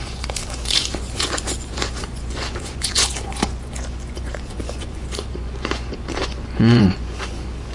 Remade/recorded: remade